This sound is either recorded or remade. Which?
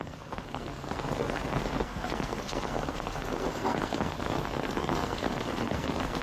remade